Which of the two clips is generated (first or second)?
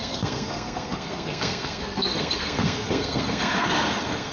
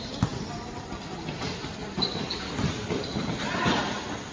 first